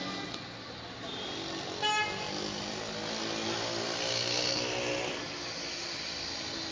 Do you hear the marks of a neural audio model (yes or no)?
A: no